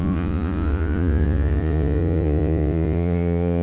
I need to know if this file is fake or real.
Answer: fake